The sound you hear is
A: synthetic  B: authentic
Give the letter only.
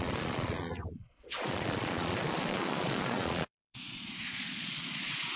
A